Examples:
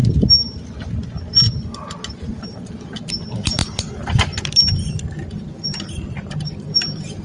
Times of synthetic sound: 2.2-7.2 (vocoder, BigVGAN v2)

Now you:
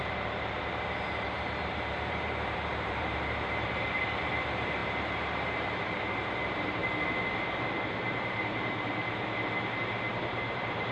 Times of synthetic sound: 0.0-6.8 (vocoder, BigVGAN v2); 7.3-9.0; 10.2-10.9